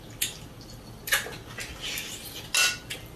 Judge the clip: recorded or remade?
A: recorded